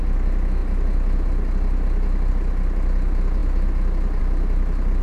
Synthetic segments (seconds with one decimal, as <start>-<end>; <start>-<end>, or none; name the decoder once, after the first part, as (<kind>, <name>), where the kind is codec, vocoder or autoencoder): none